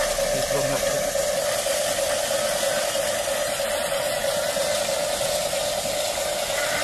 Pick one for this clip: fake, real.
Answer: real